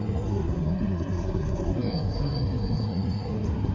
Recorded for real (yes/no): no